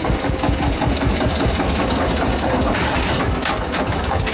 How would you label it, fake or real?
fake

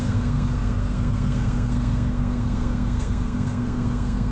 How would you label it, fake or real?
fake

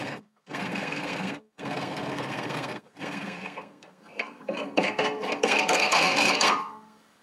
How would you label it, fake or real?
fake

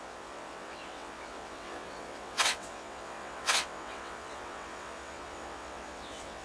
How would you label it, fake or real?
fake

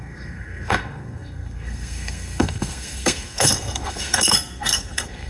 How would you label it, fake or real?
fake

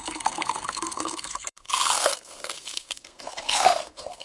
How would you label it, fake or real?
fake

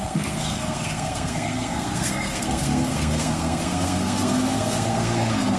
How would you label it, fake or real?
fake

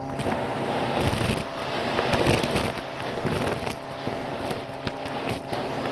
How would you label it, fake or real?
real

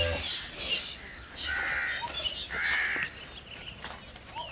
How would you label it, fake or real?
real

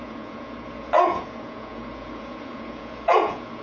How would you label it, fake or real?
fake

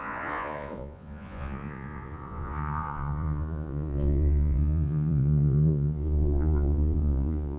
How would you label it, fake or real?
fake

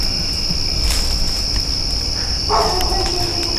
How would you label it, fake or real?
real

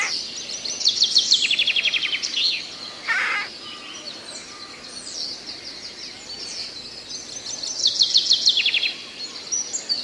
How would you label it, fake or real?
real